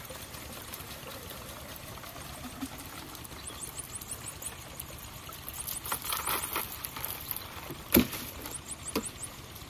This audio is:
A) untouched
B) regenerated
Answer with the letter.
A